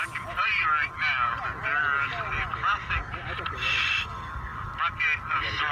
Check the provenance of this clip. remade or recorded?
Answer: recorded